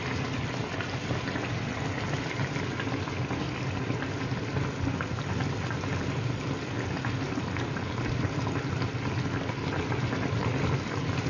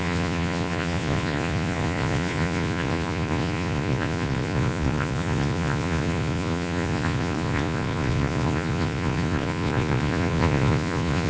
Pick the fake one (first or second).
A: second